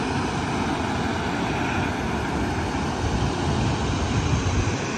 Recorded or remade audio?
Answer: recorded